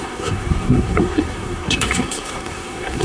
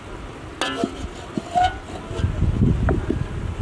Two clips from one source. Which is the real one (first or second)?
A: second